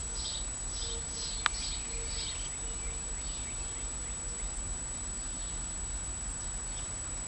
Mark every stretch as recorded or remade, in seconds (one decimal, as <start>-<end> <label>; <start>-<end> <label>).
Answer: 0.0-7.3 recorded